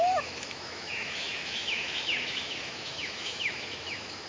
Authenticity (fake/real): fake